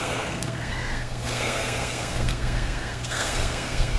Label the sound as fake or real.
fake